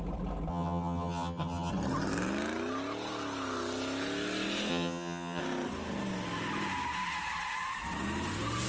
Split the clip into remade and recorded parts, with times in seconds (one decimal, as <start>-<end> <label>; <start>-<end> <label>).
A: 0.0-0.5 recorded; 0.5-1.7 remade; 1.7-4.7 recorded; 4.7-5.4 remade; 5.4-8.7 recorded